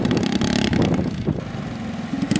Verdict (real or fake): real